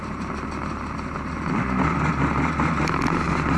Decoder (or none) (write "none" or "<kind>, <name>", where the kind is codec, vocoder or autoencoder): none